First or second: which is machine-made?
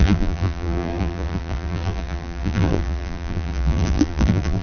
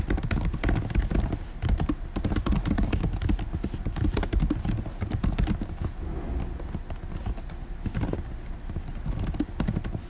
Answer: first